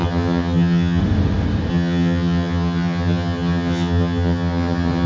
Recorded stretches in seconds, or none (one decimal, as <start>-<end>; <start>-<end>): 1.0-1.7

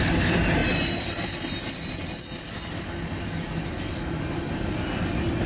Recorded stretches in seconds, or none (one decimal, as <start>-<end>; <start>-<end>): 0.0-5.5

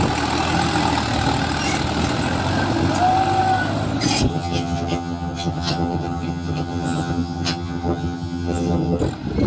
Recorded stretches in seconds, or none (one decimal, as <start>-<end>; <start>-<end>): 0.0-4.3; 9.0-9.5

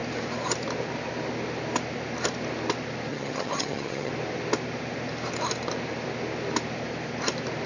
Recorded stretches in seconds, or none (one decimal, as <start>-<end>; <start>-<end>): 0.0-3.1; 4.1-7.7